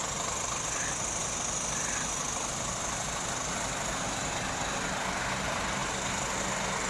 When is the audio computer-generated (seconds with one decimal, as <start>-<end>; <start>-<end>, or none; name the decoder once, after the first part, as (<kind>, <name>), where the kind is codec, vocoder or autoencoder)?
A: none